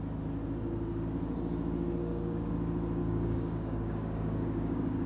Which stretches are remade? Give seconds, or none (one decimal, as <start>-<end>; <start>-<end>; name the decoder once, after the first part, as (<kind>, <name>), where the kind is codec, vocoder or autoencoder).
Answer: 2.0-2.5 (codec, DAC); 3.0-5.1